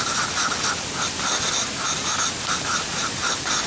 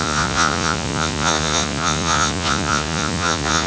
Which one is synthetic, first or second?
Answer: second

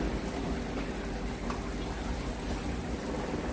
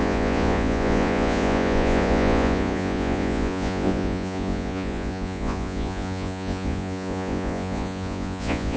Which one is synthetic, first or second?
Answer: second